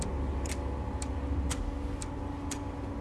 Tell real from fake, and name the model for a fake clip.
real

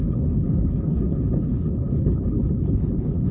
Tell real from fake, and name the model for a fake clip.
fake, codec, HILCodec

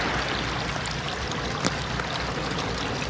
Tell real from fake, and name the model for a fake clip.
real